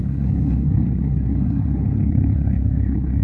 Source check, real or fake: fake